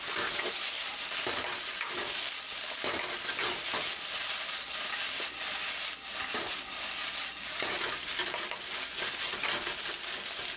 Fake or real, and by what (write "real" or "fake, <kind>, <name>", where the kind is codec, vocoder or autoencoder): real